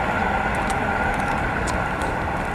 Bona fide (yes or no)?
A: no